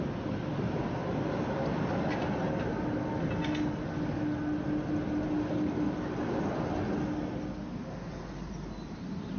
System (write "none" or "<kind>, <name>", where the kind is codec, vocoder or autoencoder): none